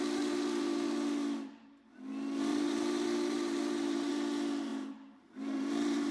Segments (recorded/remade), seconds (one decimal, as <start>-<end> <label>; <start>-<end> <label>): 0.0-2.5 recorded; 2.5-4.1 remade; 4.1-4.7 recorded; 4.7-6.1 remade